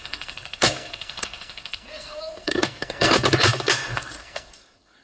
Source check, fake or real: fake